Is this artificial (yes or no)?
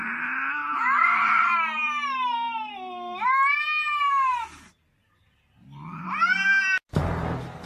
no